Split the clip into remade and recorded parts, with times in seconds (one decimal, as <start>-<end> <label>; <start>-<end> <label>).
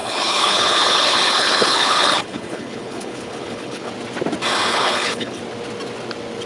0.0-3.9 remade; 3.9-4.7 recorded; 4.7-5.4 remade; 5.4-6.5 recorded